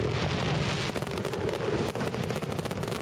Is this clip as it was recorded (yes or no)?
yes